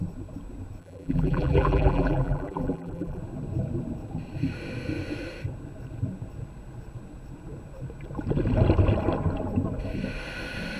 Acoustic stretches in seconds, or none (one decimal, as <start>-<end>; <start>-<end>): 0.0-0.8; 3.2-10.8